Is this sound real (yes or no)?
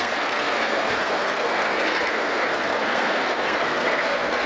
no